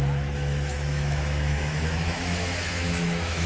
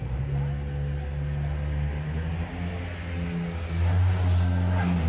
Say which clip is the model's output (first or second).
first